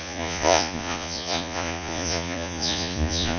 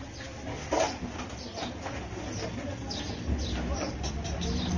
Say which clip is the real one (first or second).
second